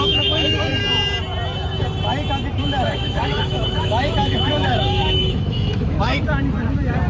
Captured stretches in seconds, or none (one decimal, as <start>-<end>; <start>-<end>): 0.8-2.6; 6.2-7.1